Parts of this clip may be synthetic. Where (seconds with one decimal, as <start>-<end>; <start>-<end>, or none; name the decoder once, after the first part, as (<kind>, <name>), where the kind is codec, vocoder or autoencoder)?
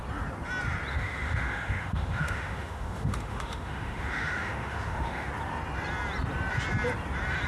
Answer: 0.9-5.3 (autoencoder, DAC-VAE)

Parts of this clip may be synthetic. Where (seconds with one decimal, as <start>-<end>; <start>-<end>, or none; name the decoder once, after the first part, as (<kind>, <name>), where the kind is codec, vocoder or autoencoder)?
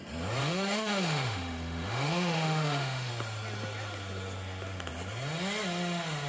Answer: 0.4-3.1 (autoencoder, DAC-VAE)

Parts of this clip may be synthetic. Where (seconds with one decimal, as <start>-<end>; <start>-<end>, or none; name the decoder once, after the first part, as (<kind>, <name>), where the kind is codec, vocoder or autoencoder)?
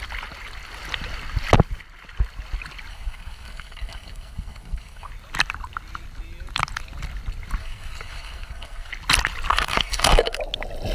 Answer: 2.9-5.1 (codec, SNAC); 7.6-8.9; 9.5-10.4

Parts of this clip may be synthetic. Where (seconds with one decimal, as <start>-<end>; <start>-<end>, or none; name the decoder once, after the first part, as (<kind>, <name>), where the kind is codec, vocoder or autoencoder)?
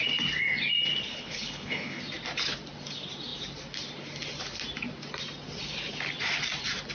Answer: 1.1-2.0 (codec, HILCodec)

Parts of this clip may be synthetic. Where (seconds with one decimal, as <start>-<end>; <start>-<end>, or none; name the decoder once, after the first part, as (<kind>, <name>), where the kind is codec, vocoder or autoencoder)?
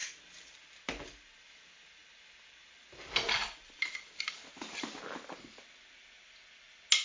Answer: none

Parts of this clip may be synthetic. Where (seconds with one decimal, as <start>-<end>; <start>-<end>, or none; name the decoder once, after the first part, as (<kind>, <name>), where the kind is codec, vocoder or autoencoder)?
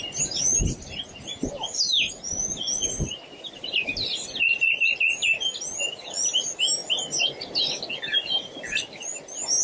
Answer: none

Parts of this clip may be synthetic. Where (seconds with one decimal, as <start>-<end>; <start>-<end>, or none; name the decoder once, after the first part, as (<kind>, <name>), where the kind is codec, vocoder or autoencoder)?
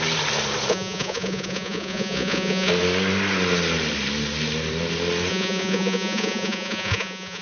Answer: 0.7-2.7 (vocoder, Vocos); 5.3-7.4